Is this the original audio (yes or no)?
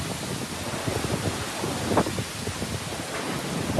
yes